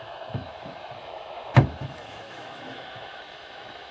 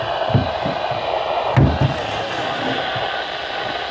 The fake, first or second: first